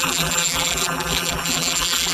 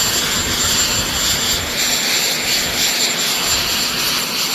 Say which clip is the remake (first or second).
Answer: first